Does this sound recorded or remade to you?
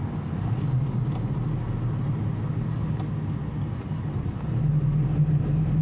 recorded